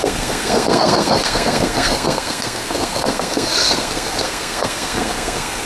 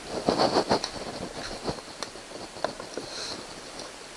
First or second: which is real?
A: second